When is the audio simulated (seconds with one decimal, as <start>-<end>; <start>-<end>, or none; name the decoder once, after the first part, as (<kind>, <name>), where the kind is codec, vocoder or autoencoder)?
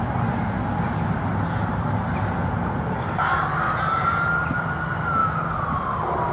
none